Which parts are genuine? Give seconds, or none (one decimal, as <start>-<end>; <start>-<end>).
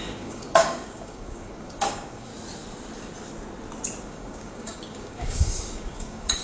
2.3-4.0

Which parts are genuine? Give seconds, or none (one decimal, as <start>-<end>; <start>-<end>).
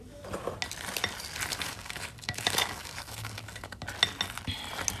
0.0-1.5; 3.8-5.0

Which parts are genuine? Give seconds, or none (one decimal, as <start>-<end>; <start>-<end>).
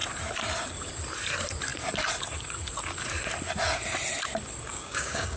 0.0-4.7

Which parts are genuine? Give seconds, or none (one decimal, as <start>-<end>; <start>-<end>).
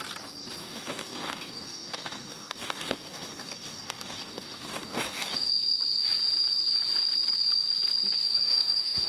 0.0-0.6; 5.5-8.2